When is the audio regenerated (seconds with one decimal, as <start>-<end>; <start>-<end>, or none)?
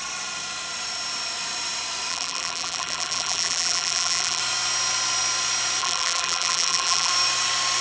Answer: 2.1-4.4; 5.8-7.1